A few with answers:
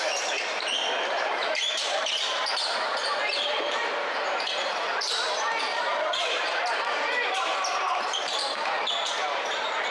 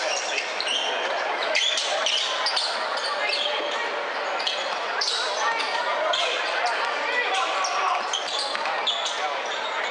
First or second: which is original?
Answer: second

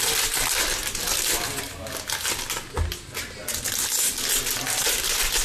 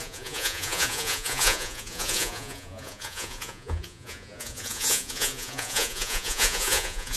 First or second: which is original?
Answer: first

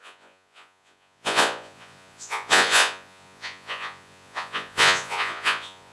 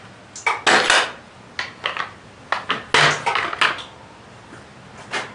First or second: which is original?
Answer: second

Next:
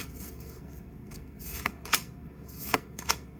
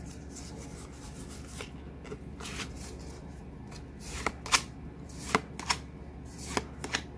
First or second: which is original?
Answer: second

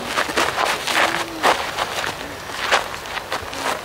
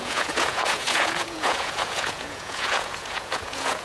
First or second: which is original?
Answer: first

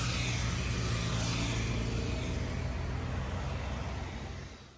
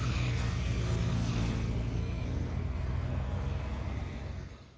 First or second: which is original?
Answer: first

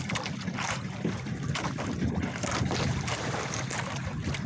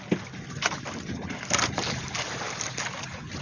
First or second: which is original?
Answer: second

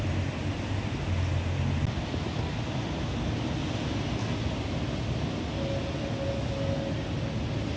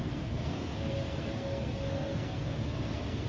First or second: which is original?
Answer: first